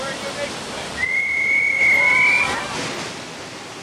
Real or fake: real